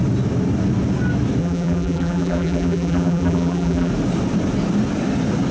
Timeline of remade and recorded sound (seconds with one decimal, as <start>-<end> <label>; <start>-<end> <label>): 0.0-1.4 recorded; 1.4-3.9 remade; 3.9-5.5 recorded